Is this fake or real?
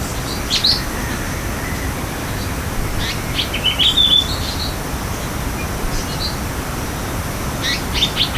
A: real